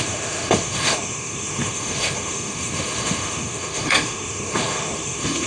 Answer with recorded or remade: remade